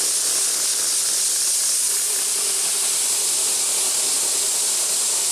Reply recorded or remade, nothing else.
recorded